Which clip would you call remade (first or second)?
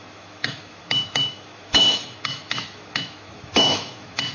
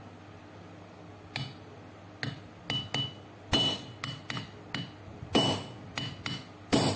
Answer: first